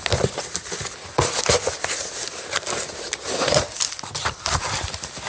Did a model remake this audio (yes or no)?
no